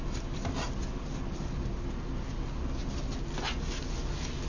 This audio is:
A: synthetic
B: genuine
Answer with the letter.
B